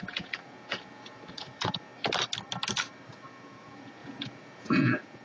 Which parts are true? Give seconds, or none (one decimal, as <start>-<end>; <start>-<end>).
1.9-3.1